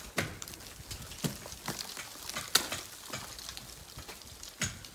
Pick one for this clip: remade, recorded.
recorded